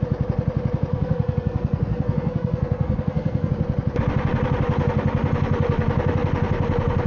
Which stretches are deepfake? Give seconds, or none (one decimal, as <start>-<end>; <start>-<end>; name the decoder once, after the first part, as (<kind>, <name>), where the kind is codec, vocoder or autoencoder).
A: 0.9-3.5 (codec, SNAC)